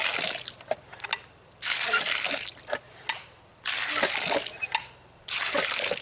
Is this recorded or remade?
recorded